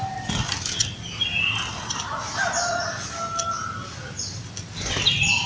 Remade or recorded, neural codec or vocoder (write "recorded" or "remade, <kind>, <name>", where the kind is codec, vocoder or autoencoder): recorded